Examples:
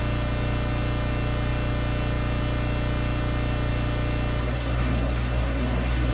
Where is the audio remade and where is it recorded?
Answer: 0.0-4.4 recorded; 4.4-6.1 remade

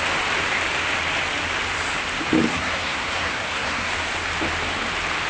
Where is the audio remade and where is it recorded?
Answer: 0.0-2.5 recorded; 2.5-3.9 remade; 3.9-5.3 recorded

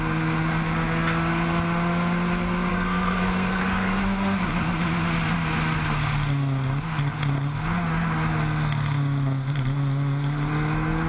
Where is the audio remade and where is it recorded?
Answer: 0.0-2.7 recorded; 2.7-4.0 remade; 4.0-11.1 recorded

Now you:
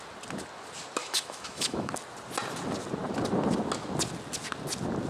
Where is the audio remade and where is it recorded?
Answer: 0.0-1.0 recorded; 1.0-1.9 remade; 1.9-5.1 recorded

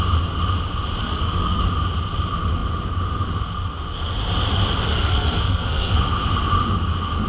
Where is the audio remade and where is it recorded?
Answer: 0.0-1.0 recorded; 1.0-1.6 remade; 1.6-4.9 recorded; 4.9-6.0 remade; 6.0-7.3 recorded

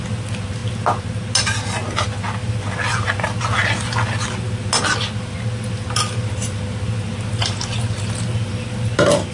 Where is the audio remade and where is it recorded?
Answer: 0.0-9.3 recorded

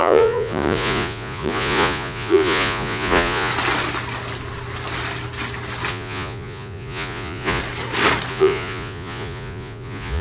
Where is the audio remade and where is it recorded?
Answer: 0.0-3.5 remade; 3.5-5.9 recorded; 5.9-7.6 remade; 7.6-8.3 recorded; 8.3-10.2 remade